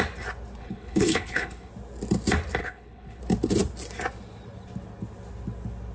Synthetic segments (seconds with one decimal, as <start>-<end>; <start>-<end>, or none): 0.6-1.7; 2.6-3.2